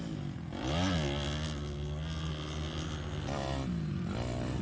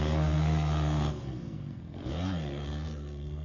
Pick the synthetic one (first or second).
second